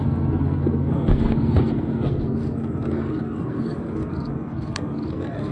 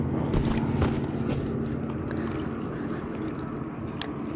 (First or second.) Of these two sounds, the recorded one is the second